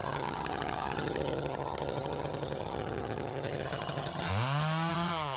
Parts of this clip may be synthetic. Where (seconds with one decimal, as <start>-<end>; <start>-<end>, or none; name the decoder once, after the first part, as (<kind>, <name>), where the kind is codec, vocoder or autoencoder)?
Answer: 0.0-4.3 (vocoder, HiFi-GAN); 4.9-5.4